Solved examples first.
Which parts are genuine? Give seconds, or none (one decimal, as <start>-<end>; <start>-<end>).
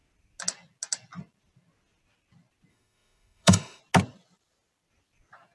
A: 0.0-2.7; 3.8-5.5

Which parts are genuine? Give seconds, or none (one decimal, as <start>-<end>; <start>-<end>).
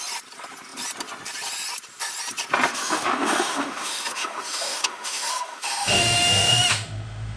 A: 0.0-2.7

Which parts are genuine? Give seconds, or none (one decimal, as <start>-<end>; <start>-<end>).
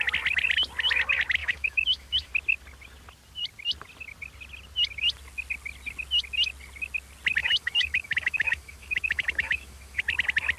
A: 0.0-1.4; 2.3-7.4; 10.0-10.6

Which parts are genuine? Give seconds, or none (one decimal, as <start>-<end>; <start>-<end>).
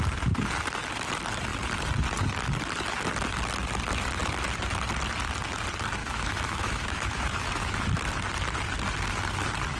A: 0.0-6.0; 7.9-9.8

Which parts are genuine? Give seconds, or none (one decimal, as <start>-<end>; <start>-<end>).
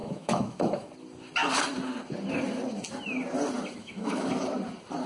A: 0.9-3.8; 4.3-5.1